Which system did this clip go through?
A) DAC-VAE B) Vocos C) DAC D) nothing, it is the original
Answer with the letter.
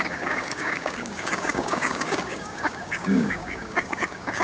C